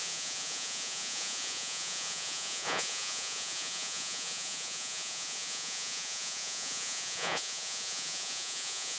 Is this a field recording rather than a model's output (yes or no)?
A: no